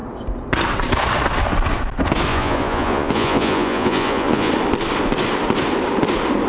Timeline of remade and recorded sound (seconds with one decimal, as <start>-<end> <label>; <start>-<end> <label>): 0.0-2.3 recorded; 2.3-4.5 remade; 4.5-6.5 recorded